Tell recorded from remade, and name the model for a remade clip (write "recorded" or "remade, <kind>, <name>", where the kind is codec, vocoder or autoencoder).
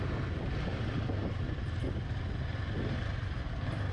recorded